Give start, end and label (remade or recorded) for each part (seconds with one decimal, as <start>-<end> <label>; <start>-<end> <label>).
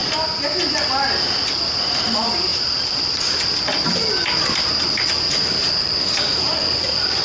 0.0-1.6 recorded; 1.6-2.5 remade; 2.5-6.2 recorded; 6.2-7.2 remade